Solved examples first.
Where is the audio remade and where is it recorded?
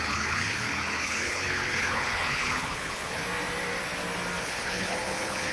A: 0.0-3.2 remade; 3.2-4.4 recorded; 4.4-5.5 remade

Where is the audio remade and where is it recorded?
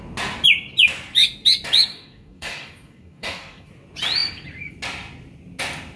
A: 0.0-1.9 recorded; 1.9-3.7 remade; 3.7-6.0 recorded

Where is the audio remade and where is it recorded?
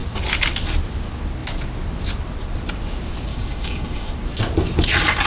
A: 0.0-3.3 recorded; 3.3-4.1 remade; 4.1-5.3 recorded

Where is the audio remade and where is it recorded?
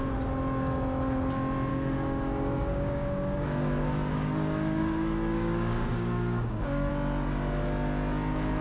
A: 0.0-1.7 recorded; 1.7-6.9 remade; 6.9-8.6 recorded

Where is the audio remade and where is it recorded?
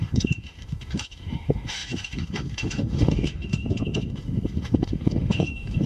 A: 0.0-5.9 remade